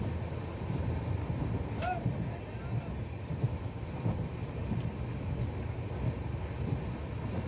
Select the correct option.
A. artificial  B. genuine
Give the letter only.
B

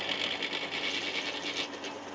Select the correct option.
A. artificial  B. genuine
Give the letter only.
B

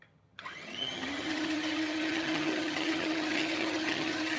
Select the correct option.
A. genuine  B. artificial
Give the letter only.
B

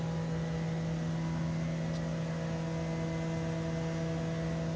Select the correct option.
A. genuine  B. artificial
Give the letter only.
A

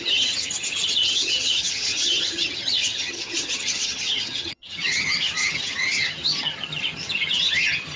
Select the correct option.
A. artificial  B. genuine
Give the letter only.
A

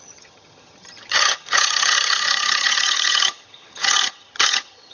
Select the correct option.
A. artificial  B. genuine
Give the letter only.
A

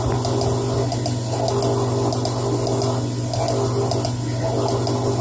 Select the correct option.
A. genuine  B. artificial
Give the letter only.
A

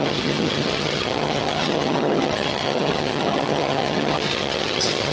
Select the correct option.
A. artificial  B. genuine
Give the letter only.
A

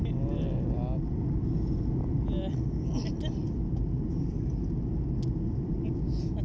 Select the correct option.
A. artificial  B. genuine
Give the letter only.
B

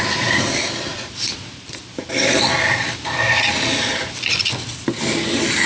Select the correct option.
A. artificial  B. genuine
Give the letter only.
B